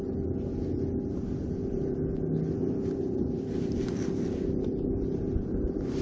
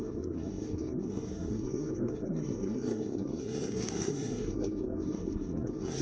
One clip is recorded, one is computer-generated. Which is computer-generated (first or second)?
second